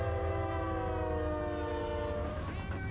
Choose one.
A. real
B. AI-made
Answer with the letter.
A